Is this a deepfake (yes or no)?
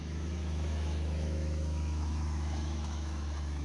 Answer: yes